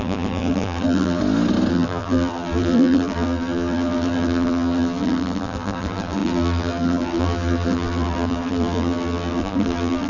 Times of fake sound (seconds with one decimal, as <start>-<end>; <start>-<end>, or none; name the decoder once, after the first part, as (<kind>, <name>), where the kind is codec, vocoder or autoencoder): 0.0-1.2 (vocoder, BigVGAN v2); 1.7-10.1

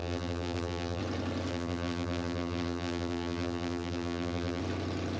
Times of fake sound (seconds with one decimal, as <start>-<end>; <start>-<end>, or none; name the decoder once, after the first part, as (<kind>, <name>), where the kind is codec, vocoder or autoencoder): 0.0-1.0 (vocoder, BigVGAN v2); 1.5-4.6